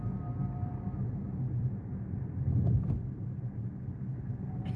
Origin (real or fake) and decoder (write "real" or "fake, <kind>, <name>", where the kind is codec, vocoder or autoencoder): real